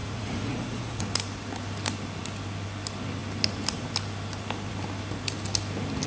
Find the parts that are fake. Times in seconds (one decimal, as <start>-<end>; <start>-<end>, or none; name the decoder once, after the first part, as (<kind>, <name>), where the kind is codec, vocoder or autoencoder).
0.0-1.0 (vocoder, Vocos)